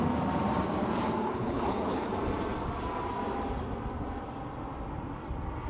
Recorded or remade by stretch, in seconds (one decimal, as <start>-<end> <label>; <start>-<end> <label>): 0.0-1.2 recorded; 1.2-2.1 remade; 2.1-5.7 recorded